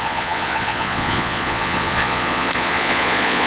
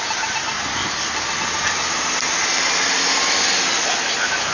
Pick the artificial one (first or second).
first